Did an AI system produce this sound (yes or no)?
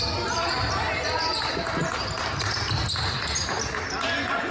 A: no